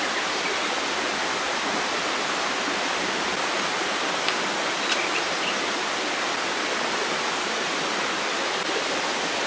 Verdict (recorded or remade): recorded